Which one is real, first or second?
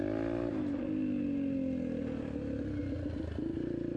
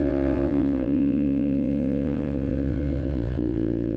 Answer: first